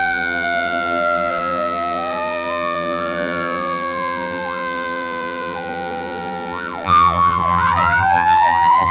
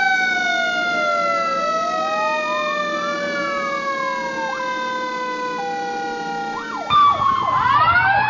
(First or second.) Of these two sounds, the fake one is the first